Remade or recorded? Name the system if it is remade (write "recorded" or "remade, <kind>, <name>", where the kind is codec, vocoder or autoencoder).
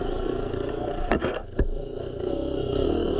remade, codec, SNAC